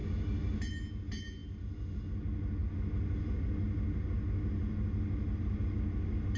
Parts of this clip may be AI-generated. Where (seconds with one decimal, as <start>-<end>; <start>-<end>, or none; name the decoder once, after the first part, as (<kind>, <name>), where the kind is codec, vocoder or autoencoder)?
none